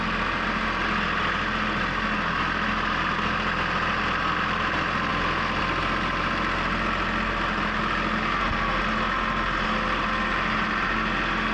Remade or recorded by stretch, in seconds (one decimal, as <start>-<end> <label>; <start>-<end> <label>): 0.0-11.5 recorded